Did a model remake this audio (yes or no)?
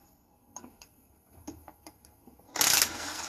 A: yes